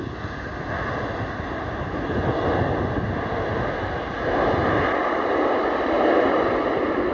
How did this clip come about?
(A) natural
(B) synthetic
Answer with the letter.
A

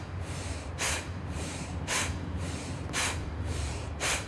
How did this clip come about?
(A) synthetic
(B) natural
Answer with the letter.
A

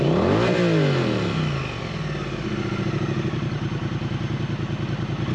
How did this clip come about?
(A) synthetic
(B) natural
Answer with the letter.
B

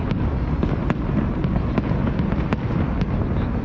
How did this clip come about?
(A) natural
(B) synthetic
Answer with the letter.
A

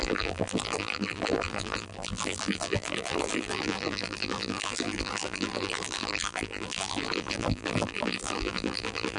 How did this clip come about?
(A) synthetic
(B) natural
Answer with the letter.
A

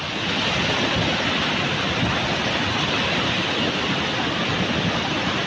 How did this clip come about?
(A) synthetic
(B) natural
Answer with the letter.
B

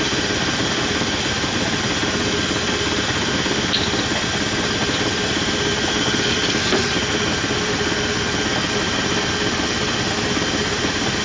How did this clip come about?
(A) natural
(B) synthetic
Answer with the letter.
A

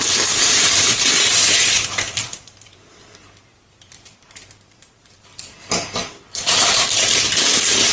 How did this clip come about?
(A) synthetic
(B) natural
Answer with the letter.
A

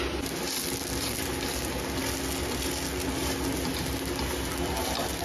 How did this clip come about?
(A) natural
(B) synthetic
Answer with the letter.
A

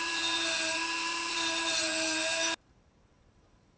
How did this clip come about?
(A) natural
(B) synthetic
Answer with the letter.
B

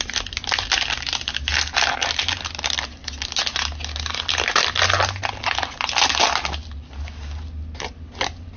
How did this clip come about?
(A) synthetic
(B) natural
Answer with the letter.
B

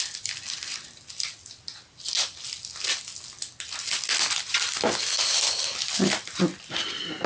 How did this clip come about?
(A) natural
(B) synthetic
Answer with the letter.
A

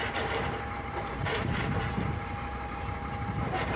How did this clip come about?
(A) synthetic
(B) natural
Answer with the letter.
A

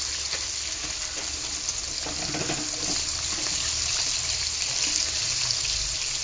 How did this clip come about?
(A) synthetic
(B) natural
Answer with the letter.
B